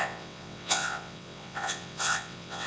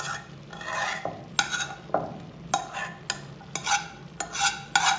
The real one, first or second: second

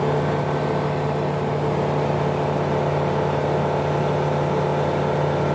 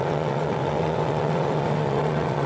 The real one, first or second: first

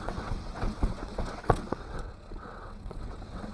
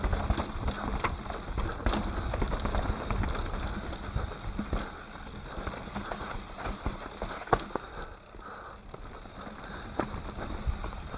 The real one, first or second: second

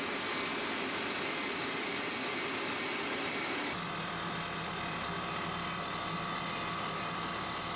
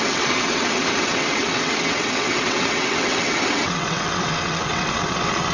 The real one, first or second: first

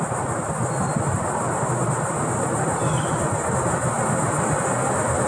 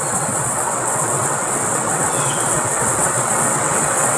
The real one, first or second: first